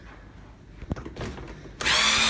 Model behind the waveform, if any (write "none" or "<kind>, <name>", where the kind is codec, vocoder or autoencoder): none